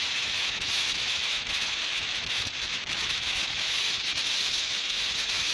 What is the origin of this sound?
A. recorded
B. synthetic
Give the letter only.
B